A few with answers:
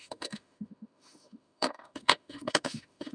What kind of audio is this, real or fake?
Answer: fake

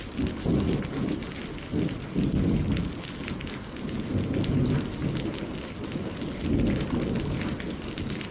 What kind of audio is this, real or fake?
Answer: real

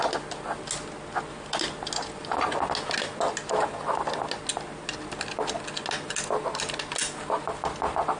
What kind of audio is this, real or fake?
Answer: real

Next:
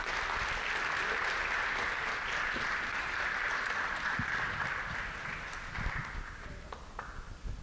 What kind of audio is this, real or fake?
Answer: real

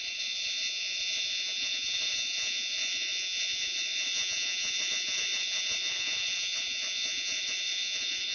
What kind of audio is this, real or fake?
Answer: fake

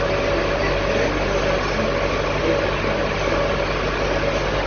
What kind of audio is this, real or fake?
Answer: real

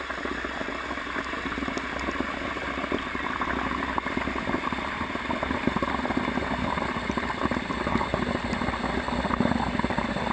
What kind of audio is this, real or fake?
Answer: real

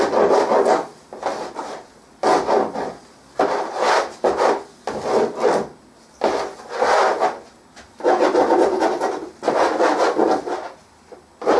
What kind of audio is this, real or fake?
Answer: real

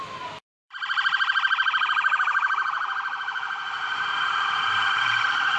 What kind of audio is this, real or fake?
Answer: fake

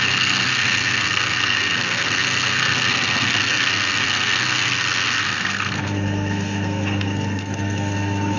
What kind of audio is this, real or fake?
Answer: fake